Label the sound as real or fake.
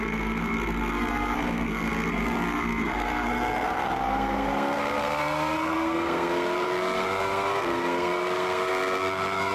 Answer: fake